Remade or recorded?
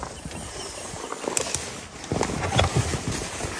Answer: recorded